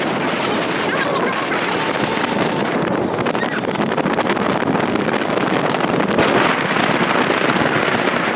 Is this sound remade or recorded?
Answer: recorded